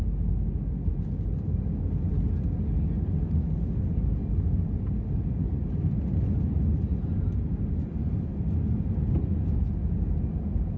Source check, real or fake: real